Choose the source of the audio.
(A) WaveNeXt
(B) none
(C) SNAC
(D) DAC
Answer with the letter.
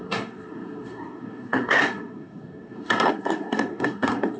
C